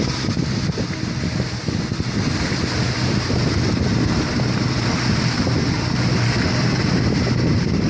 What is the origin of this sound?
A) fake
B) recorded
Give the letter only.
B